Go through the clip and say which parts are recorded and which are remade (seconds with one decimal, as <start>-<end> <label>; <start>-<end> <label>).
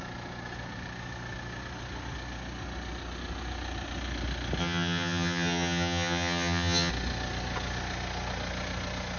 0.0-4.6 recorded; 4.6-6.9 remade; 6.9-9.2 recorded